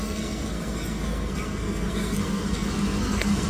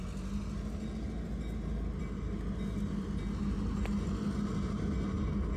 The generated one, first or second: first